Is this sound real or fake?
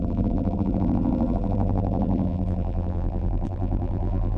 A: fake